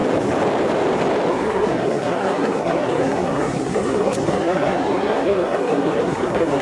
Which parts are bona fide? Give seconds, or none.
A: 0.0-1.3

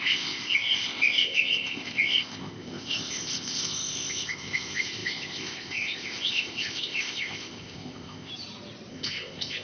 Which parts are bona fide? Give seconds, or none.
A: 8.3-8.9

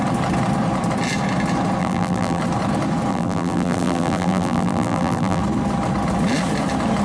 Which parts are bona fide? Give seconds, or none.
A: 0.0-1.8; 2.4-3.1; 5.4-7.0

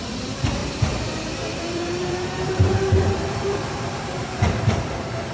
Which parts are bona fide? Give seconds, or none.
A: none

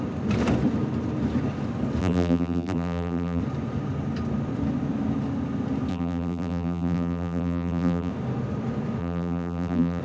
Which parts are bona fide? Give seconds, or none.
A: 0.0-2.0; 3.4-5.9; 8.1-9.0

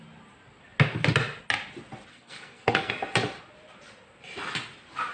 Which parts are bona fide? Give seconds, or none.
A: 0.0-2.1; 2.9-5.1

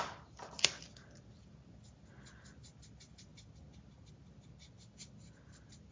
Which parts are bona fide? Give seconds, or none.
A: 0.0-5.9

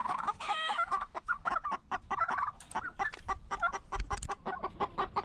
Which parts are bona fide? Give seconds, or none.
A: 1.5-5.2